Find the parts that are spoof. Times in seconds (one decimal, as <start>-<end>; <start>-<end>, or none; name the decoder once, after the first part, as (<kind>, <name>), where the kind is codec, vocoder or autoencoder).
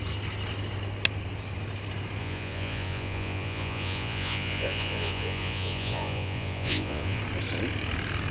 2.2-7.2 (vocoder, Vocos)